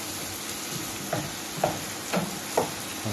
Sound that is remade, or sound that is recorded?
recorded